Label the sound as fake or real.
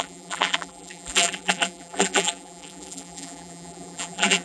fake